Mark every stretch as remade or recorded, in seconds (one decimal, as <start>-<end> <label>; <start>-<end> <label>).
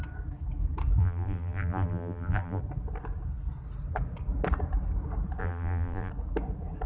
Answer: 0.0-1.0 recorded; 1.0-2.6 remade; 2.6-5.4 recorded; 5.4-6.1 remade; 6.1-6.9 recorded